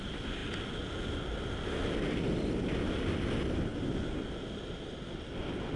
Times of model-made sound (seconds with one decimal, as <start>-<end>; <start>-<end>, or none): none